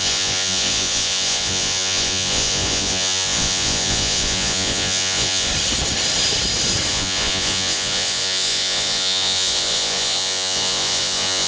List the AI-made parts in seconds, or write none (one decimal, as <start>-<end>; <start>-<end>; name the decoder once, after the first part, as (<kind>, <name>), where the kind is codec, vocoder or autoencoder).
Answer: 0.0-5.5 (vocoder, Vocos); 6.9-11.5